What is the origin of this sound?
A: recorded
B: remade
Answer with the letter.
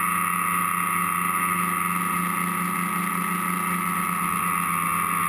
A